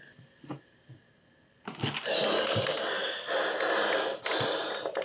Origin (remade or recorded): recorded